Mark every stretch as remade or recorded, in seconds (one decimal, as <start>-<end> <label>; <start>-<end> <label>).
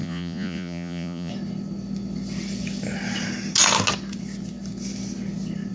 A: 0.0-1.3 remade; 1.3-5.7 recorded